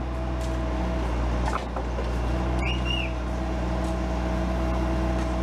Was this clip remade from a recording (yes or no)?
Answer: no